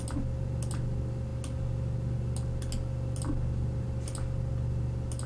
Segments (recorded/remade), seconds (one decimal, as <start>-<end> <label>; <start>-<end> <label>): 0.0-5.3 recorded